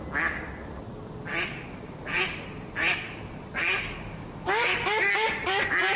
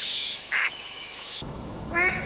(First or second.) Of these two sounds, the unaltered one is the first